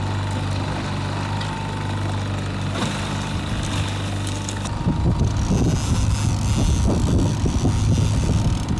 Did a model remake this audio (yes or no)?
no